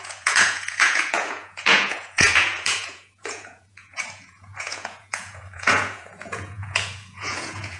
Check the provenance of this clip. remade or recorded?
remade